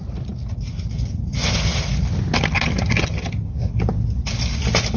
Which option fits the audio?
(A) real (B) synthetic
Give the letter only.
A